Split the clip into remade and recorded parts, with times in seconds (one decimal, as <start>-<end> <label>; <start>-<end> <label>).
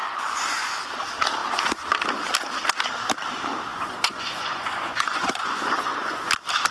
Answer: 0.0-0.9 remade; 0.9-3.7 recorded; 3.7-6.3 remade; 6.3-6.7 recorded